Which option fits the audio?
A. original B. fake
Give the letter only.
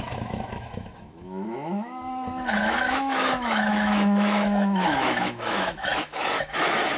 B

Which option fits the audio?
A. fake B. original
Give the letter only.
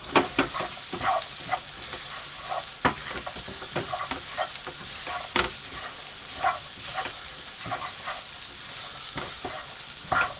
B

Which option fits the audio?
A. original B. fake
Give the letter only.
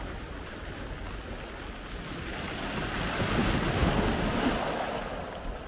A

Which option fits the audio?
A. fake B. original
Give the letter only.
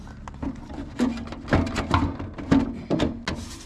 B